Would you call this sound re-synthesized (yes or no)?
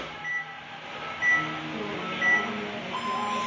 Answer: no